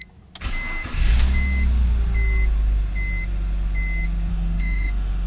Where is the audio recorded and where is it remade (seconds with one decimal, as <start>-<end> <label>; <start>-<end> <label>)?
0.0-4.3 recorded; 4.3-5.3 remade